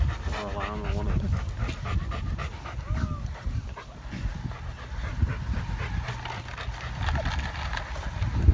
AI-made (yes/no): no